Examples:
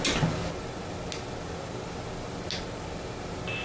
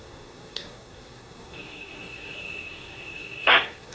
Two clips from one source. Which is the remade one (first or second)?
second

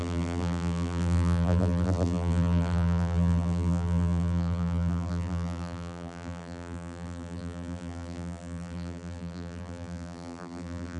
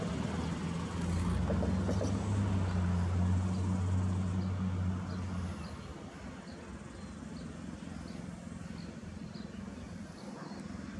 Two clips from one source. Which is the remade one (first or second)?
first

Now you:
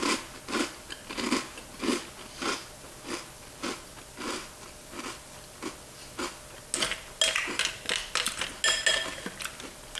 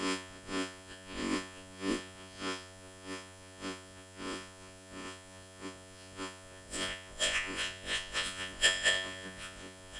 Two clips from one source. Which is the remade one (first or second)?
second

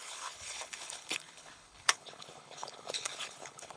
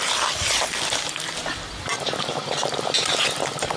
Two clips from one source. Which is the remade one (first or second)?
first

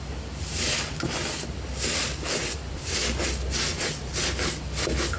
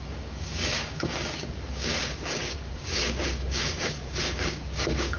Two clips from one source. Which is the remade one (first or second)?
second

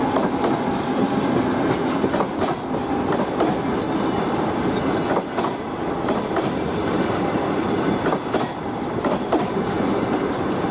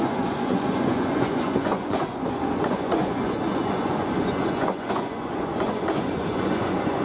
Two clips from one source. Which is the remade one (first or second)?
second